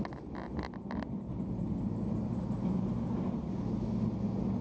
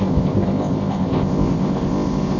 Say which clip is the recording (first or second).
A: first